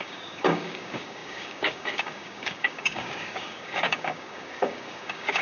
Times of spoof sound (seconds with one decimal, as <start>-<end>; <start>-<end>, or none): 0.0-5.4

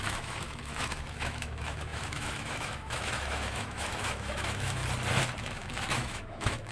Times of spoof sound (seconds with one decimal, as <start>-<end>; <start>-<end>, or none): 0.0-4.8; 5.4-6.7